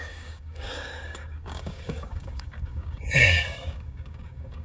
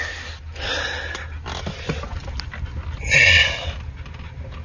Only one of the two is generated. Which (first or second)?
first